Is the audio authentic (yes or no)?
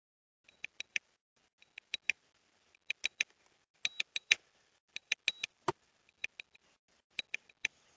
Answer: yes